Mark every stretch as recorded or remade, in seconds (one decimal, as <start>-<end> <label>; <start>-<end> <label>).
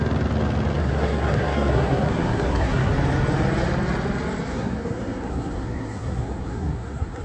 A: 0.0-0.8 recorded; 0.8-2.9 remade; 2.9-4.5 recorded; 4.5-7.2 remade